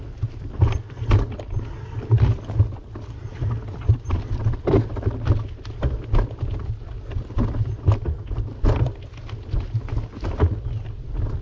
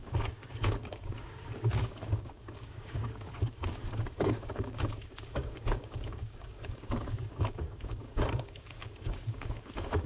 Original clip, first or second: first